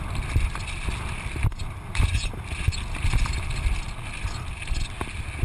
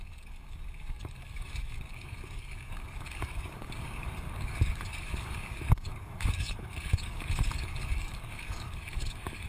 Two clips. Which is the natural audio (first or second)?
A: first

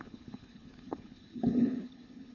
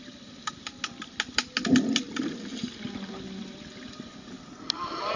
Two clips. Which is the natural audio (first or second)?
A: second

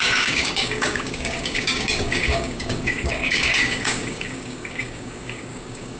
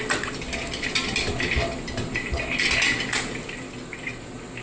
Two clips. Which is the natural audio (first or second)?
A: second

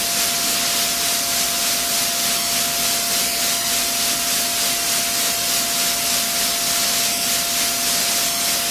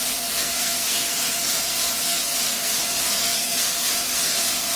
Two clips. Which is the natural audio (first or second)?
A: first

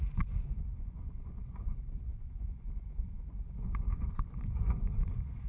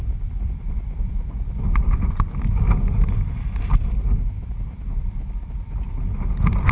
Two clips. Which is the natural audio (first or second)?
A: second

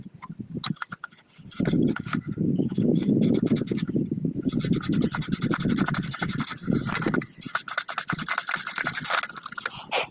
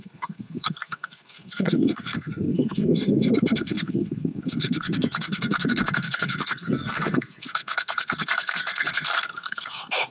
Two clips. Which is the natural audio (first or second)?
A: first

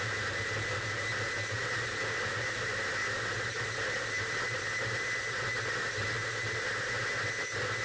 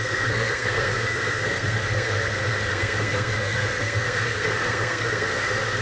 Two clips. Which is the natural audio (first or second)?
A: first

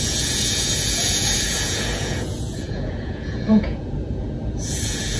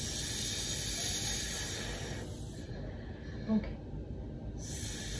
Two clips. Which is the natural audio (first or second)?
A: second